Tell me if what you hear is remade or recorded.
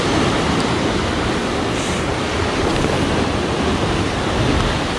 recorded